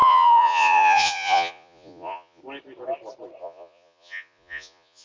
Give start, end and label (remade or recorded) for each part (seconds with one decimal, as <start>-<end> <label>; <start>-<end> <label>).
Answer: 0.0-2.4 remade; 2.4-3.4 recorded; 3.4-5.0 remade